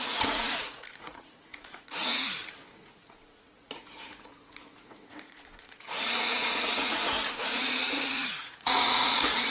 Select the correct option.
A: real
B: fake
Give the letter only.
B